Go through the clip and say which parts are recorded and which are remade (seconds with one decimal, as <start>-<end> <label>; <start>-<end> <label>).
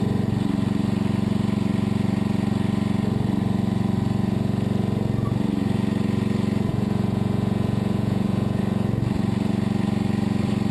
0.0-6.7 recorded; 6.7-8.6 remade; 8.6-10.7 recorded